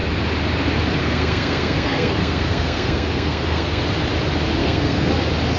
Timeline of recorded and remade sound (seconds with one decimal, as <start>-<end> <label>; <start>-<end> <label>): 0.0-1.0 recorded; 1.0-3.8 remade; 3.8-4.6 recorded; 4.6-5.1 remade; 5.1-5.6 recorded